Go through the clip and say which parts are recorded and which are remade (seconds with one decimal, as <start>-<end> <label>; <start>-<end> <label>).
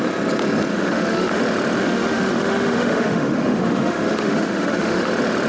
0.0-0.7 recorded; 0.7-1.4 remade; 1.4-1.8 recorded; 1.8-5.1 remade; 5.1-5.5 recorded